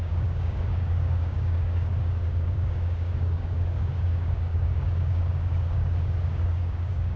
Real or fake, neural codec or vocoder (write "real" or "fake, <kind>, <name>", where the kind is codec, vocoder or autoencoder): fake, codec, DAC